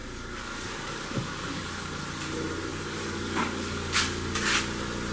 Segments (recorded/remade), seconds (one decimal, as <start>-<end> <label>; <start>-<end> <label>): 0.0-2.0 remade; 2.0-2.7 recorded; 2.7-4.5 remade; 4.5-5.1 recorded